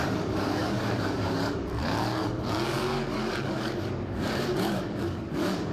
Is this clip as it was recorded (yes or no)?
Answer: no